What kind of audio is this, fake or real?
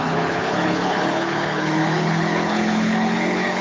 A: fake